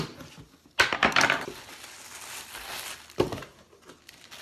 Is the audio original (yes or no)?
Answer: yes